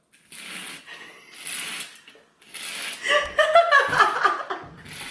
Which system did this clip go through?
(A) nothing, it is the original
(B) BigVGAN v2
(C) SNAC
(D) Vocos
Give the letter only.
A